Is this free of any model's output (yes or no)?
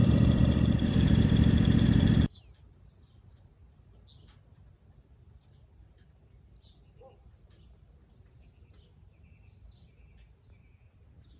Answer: yes